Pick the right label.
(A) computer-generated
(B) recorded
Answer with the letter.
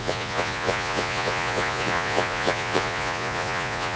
A